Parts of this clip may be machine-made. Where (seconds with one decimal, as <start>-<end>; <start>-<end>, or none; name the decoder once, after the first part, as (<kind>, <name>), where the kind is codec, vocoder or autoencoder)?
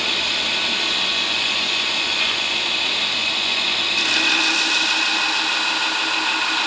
1.1-2.7 (vocoder, Vocos); 3.2-3.8